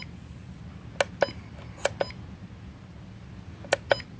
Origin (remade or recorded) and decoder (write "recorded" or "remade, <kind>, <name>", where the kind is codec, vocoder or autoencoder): recorded